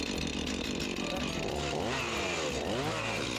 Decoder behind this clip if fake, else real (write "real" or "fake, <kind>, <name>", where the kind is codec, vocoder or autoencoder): real